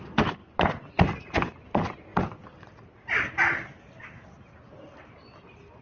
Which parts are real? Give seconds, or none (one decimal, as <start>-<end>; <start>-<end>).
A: 0.0-5.8